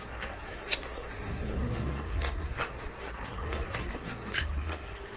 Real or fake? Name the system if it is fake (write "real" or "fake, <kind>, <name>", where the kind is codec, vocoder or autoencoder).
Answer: fake, codec, SNAC